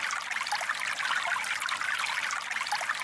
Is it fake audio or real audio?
real